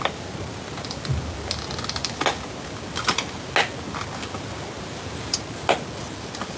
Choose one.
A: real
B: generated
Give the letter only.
A